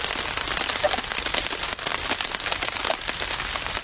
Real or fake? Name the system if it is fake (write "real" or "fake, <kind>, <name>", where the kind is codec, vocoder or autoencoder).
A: real